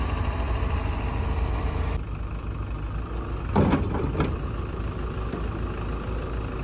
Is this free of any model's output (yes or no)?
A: yes